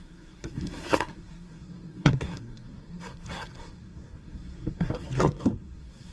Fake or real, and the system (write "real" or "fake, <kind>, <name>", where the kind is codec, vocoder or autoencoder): fake, codec, SNAC